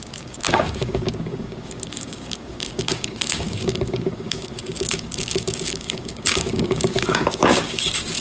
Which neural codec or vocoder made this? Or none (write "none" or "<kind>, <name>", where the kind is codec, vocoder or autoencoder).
codec, DAC